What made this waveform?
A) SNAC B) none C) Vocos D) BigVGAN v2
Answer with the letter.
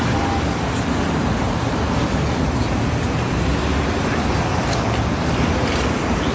B